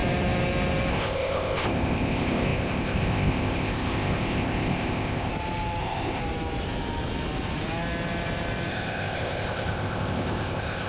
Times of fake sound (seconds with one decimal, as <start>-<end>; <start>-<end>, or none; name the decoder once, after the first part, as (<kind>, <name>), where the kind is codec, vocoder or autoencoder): 0.9-5.3 (codec, ZipCodec); 5.8-6.2; 8.7-10.9